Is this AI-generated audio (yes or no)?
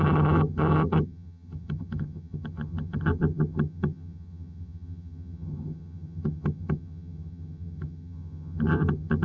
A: yes